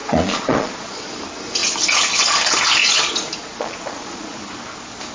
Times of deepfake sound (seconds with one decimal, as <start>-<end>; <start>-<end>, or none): 0.0-1.1; 2.8-4.4